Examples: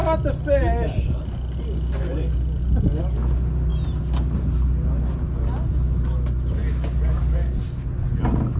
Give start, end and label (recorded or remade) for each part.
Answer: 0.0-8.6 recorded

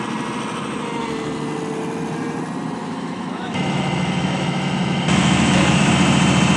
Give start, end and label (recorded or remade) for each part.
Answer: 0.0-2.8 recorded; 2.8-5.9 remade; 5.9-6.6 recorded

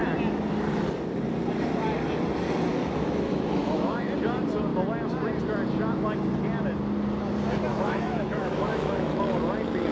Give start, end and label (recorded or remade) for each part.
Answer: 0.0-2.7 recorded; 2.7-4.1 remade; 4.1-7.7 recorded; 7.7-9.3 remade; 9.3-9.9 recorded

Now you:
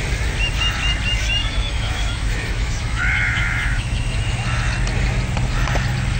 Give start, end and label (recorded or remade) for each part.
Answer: 0.0-1.4 recorded; 1.4-4.2 remade; 4.2-6.2 recorded

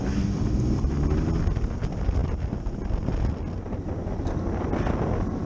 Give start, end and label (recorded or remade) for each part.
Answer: 0.0-5.4 recorded

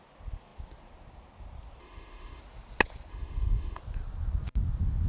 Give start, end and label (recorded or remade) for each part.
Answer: 0.0-1.8 recorded; 1.8-2.4 remade; 2.4-3.1 recorded; 3.1-3.8 remade; 3.8-5.1 recorded

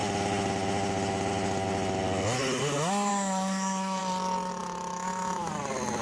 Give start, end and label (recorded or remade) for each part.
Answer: 0.0-3.1 recorded; 3.1-4.0 remade; 4.0-4.6 recorded; 4.6-5.5 remade; 5.5-6.0 recorded